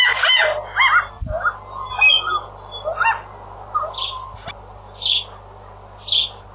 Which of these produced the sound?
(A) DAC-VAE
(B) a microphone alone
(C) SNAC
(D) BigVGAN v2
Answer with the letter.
B